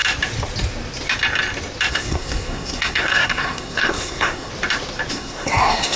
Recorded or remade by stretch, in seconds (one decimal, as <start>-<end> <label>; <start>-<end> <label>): 0.0-1.9 recorded; 1.9-4.5 remade; 4.5-5.1 recorded; 5.1-6.0 remade